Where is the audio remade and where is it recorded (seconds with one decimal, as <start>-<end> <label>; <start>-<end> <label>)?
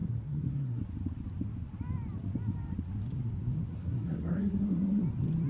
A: 0.0-0.8 remade; 0.8-3.7 recorded; 3.7-5.0 remade; 5.0-5.5 recorded